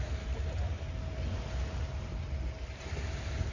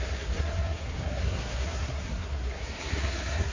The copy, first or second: second